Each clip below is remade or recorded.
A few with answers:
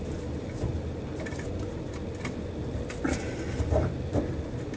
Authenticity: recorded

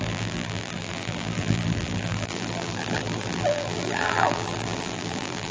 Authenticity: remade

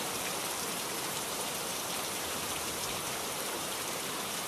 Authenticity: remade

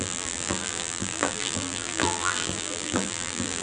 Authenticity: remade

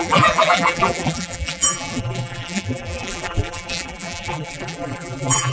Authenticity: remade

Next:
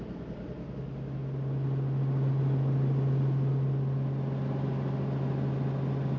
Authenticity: recorded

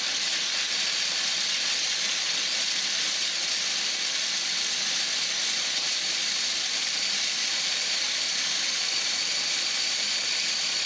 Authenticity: recorded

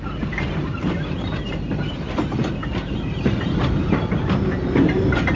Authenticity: remade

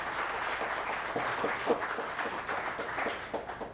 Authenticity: recorded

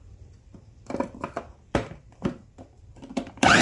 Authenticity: remade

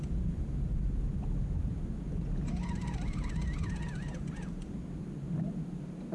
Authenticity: recorded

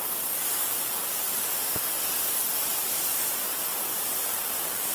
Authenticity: recorded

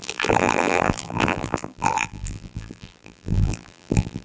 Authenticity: remade